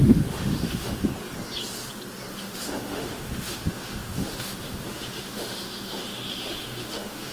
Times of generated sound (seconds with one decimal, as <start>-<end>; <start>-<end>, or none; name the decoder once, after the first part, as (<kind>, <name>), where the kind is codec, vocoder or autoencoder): 0.0-1.1 (autoencoder, DAC-VAE); 2.3-7.3